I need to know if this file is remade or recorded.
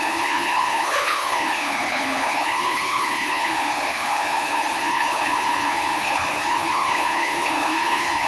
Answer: remade